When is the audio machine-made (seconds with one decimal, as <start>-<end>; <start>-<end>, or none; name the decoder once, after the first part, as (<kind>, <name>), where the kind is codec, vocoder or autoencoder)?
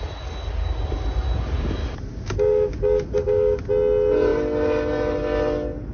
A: 2.1-3.6 (codec, DAC)